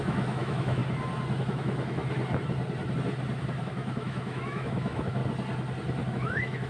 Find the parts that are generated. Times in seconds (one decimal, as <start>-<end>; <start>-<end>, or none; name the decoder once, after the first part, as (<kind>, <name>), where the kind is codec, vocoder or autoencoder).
0.0-0.8 (autoencoder, DAC-VAE); 1.4-2.0; 3.6-5.2; 6.1-6.7

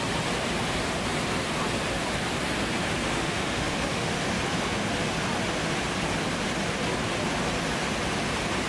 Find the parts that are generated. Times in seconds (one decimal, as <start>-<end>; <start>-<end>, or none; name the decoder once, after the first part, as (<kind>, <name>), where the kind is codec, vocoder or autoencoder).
3.2-4.1 (autoencoder, DAC-VAE)

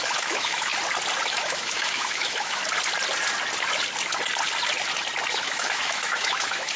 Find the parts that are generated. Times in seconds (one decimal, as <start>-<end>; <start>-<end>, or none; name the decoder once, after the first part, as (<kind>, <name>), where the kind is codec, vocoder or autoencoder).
0.0-0.7 (autoencoder, DAC-VAE); 1.3-2.6; 5.3-6.8

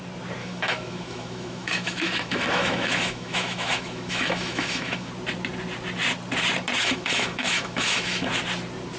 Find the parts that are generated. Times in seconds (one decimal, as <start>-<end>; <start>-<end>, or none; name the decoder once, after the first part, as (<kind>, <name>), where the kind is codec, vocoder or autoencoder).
0.4-5.1 (autoencoder, DAC-VAE); 6.8-8.3

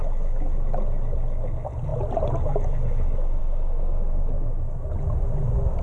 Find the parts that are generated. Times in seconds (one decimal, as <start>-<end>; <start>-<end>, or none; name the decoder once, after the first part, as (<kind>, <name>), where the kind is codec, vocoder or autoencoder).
none

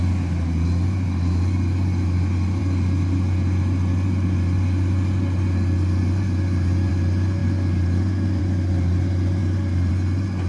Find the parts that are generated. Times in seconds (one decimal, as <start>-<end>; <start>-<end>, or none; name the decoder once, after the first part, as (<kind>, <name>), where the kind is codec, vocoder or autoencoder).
none

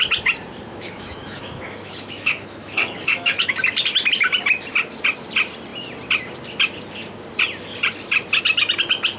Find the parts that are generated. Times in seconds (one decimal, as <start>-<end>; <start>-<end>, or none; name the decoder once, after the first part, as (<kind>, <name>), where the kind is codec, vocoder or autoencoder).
0.7-3.5 (autoencoder, DAC-VAE)

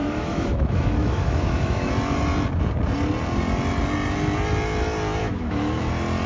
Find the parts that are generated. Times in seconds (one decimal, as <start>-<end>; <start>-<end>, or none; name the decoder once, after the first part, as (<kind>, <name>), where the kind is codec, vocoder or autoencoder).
0.0-1.9 (autoencoder, DAC-VAE); 5.2-5.8